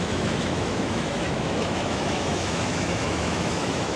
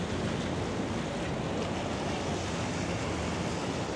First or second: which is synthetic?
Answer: first